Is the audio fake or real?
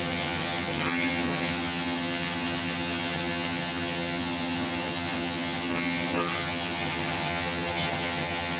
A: fake